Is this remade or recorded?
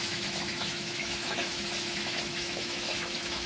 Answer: remade